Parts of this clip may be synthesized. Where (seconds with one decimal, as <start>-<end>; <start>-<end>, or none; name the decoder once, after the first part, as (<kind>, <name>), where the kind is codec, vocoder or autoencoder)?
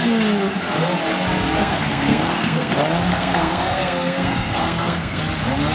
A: 1.6-2.7 (codec, SNAC); 3.1-5.2